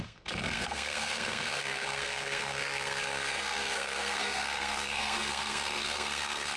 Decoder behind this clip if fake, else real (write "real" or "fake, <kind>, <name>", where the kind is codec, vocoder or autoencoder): fake, codec, SNAC